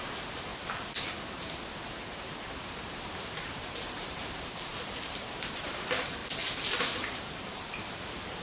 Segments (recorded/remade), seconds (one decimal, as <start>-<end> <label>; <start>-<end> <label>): 0.0-0.5 remade; 0.5-2.6 recorded; 2.6-6.2 remade; 6.2-6.7 recorded; 6.7-8.4 remade